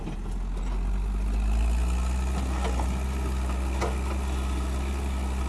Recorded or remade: recorded